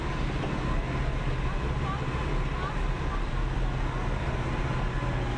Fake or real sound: real